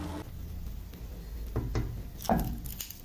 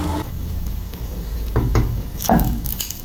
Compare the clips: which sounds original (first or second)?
first